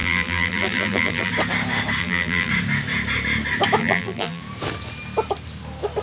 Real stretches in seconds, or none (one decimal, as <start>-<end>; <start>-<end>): 1.3-2.0; 2.5-3.8; 4.4-6.0